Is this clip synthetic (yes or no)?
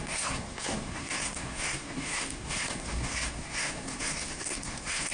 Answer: yes